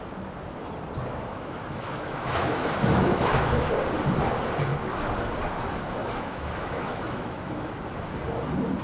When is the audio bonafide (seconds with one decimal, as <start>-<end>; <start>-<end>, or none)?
0.0-1.3; 3.7-6.0; 7.7-8.8